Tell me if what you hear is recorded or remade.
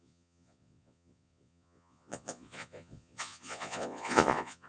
remade